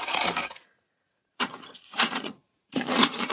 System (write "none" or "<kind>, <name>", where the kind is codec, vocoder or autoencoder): vocoder, Vocos